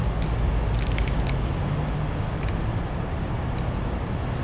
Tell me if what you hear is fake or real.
real